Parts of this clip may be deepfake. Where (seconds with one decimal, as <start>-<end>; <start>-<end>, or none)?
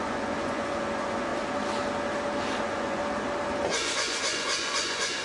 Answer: 0.0-1.3; 2.6-3.0; 3.7-5.2